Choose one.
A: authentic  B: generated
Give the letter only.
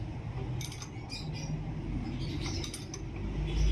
A